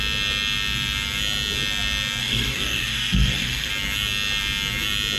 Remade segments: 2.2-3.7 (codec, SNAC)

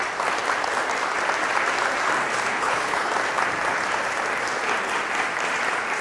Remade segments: 2.5-3.1 (codec, HILCodec)

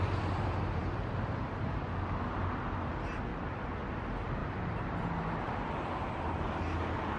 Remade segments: none